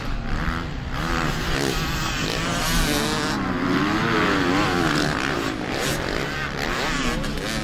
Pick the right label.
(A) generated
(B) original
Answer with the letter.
B